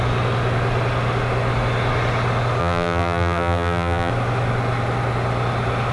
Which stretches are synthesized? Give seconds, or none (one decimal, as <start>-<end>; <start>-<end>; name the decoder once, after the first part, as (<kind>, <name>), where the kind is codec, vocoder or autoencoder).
2.6-4.1 (vocoder, BigVGAN v2)